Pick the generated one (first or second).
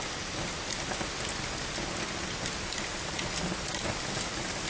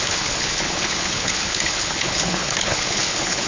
second